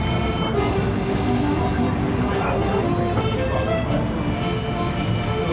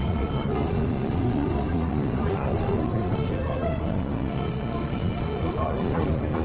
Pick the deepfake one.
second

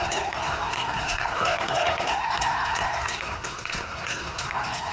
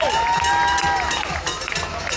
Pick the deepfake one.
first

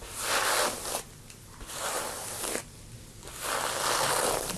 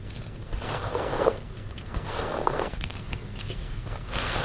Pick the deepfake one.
second